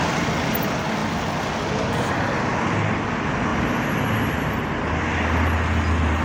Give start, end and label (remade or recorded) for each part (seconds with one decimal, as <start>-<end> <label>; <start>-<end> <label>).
0.0-3.5 recorded; 3.5-4.6 remade; 4.6-6.2 recorded